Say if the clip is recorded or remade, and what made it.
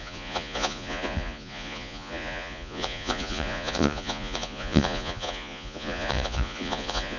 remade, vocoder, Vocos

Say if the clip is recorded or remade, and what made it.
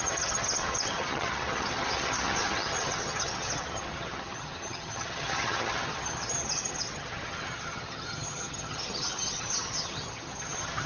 remade, vocoder, HiFi-GAN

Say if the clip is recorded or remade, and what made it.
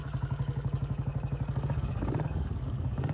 remade, codec, DAC